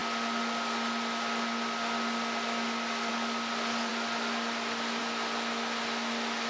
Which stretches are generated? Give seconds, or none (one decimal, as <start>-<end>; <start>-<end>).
none